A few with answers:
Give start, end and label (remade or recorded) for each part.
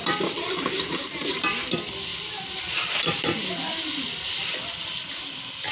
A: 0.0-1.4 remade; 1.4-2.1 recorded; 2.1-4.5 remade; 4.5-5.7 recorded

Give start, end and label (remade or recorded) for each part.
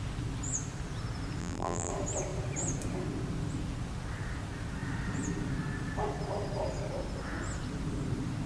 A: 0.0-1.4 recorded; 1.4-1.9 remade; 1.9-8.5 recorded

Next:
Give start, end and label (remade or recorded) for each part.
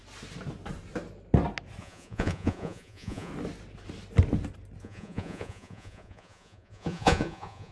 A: 0.0-1.8 recorded; 1.8-3.3 remade; 3.3-4.8 recorded; 4.8-7.7 remade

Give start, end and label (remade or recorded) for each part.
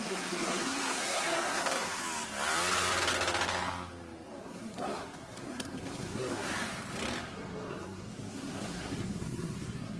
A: 0.0-2.0 remade; 2.0-4.4 recorded; 4.4-6.5 remade; 6.5-7.3 recorded; 7.3-10.0 remade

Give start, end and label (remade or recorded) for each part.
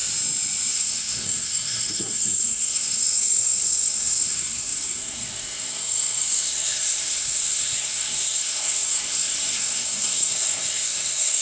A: 0.0-0.7 recorded; 0.7-11.4 remade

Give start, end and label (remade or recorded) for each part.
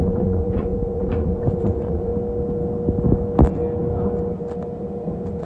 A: 0.0-2.1 remade; 2.1-5.4 recorded